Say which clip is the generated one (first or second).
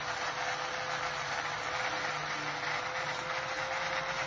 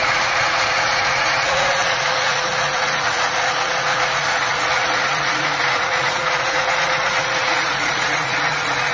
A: second